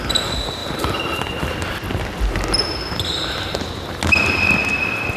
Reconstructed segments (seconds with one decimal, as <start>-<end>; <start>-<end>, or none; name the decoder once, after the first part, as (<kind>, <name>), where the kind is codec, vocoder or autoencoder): none